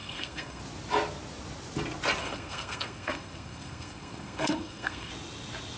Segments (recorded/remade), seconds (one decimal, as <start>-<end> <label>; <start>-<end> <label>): 0.0-0.6 remade; 0.6-2.2 recorded; 2.2-5.1 remade; 5.1-5.8 recorded